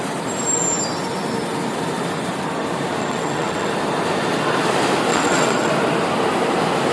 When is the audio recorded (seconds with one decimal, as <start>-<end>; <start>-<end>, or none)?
0.0-3.0; 3.7-5.1; 5.7-6.9